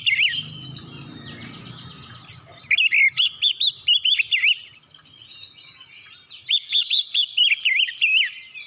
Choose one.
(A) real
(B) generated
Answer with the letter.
A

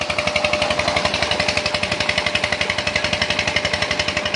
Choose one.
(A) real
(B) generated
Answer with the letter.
A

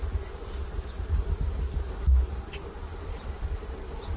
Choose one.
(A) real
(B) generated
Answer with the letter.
A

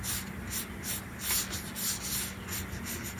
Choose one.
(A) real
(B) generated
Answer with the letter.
A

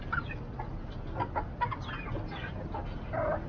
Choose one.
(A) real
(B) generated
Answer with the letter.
A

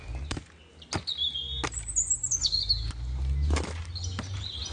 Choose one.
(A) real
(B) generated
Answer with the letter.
A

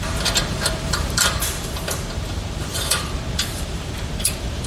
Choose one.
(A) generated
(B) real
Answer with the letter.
A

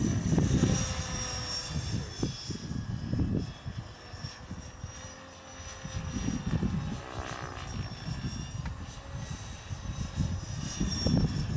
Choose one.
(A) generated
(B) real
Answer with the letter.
B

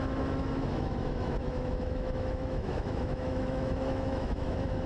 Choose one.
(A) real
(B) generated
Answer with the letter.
B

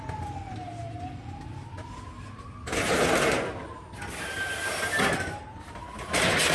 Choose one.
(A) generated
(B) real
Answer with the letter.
B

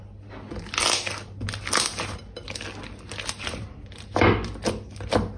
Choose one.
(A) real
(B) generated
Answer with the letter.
A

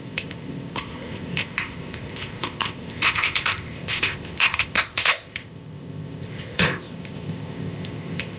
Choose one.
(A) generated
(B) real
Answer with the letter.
A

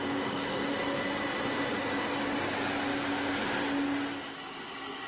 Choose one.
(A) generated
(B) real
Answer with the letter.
B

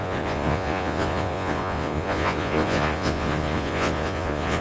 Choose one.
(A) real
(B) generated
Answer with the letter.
B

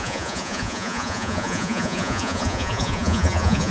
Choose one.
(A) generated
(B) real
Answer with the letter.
A